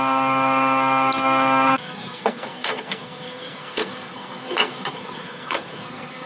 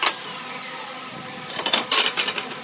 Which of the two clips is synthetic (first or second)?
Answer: first